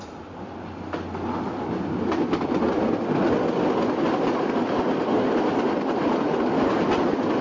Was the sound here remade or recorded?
recorded